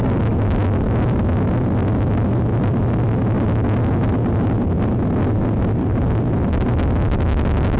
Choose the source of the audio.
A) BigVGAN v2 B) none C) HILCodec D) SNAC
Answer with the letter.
B